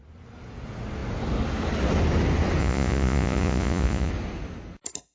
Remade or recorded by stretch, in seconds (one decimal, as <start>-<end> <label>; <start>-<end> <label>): 0.0-2.6 recorded; 2.6-4.1 remade; 4.1-5.1 recorded

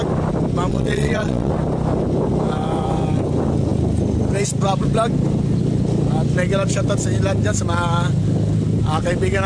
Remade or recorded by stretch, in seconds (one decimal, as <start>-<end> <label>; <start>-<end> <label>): 0.0-0.7 recorded; 0.7-1.5 remade; 1.5-9.5 recorded

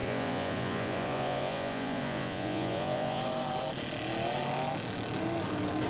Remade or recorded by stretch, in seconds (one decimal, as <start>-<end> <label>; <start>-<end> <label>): 0.0-3.2 remade; 3.2-5.9 recorded